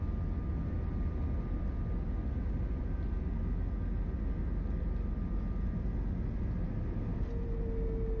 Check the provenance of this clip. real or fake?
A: real